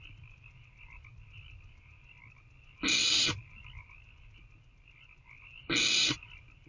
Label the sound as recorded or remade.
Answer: recorded